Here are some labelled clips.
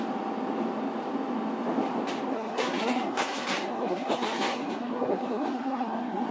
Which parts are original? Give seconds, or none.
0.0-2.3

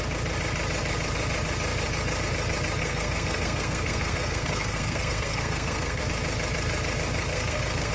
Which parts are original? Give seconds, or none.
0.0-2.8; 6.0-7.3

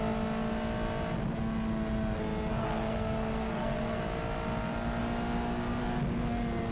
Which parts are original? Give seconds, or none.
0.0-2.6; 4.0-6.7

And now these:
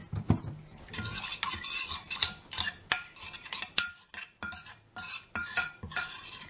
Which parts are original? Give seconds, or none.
0.0-6.5